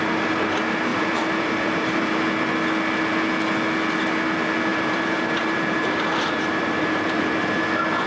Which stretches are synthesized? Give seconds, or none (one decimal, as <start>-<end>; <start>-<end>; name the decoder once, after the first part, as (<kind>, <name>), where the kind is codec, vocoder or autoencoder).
0.9-2.2 (vocoder, BigVGAN v2); 4.7-7.6